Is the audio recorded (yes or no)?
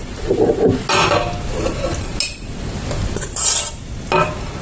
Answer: yes